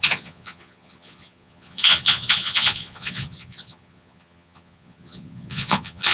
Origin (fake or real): fake